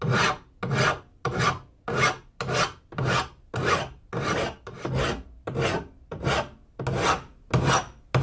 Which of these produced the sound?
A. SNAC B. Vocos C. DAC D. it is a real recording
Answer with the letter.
D